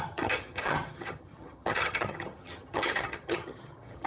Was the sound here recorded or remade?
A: remade